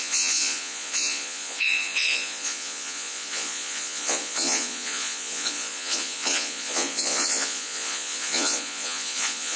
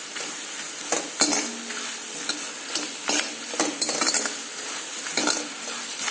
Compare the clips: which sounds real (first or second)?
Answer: second